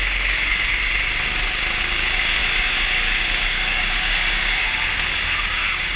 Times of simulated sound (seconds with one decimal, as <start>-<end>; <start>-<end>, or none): 0.0-0.7; 1.8-6.0